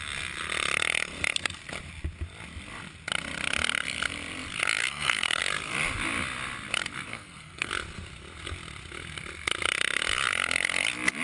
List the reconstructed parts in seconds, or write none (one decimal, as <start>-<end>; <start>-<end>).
4.8-5.4; 7.1-7.7